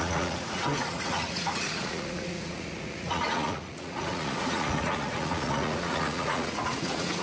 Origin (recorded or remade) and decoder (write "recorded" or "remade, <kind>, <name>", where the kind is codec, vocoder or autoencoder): remade, vocoder, Vocos